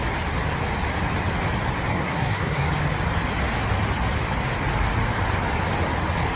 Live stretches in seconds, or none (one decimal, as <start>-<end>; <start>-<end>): 0.0-1.9; 2.7-6.4